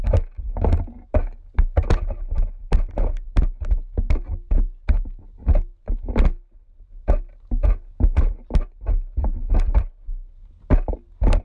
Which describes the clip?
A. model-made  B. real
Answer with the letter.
B